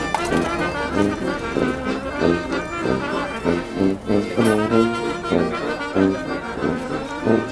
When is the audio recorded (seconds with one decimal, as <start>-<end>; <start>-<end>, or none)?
0.0-6.6